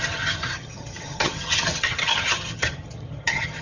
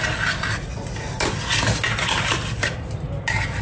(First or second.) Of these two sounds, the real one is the second